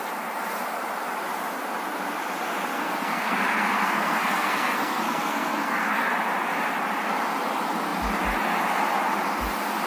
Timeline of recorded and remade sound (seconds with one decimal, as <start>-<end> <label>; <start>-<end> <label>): 0.0-2.7 recorded; 2.7-6.1 remade; 6.1-9.9 recorded